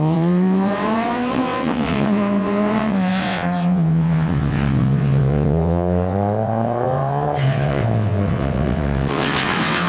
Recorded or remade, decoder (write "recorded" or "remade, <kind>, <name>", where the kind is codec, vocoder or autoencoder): remade, vocoder, WaveNeXt